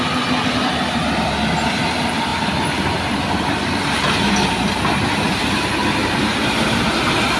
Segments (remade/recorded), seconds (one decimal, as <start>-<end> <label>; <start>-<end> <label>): 0.0-2.3 recorded; 2.3-3.1 remade; 3.1-6.0 recorded; 6.0-6.8 remade; 6.8-7.4 recorded